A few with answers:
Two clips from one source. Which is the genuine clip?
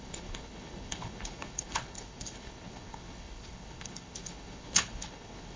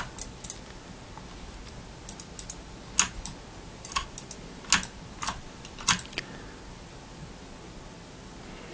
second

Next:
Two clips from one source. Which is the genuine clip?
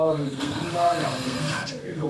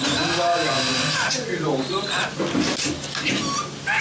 second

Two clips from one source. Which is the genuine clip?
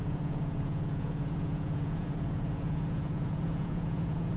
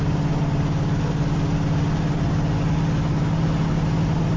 second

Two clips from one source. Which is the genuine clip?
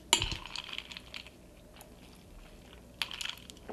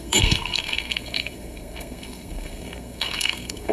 first